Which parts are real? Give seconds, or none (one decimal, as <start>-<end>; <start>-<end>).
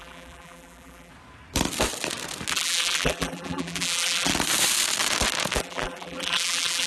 1.1-2.5; 4.3-5.6